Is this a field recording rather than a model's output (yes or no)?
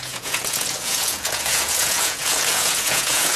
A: no